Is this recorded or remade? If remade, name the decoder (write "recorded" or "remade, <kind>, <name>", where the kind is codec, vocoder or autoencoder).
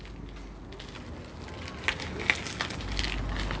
recorded